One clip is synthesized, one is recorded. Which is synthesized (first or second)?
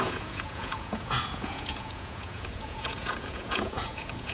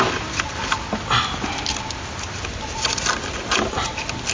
first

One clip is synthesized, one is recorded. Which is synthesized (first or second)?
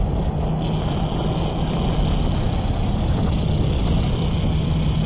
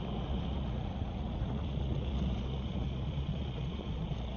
second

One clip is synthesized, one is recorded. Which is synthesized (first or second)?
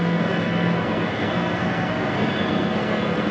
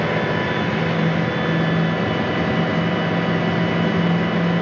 first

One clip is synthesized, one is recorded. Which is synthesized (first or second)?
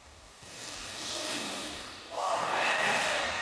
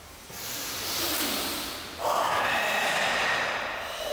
first